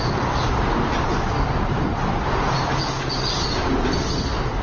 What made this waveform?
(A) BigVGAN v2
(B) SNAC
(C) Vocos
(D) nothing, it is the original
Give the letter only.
D